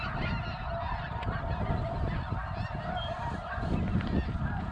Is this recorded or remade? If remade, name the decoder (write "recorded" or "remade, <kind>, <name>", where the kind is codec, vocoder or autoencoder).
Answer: recorded